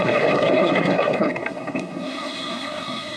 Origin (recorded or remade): remade